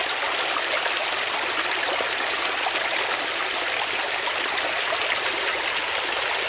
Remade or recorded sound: recorded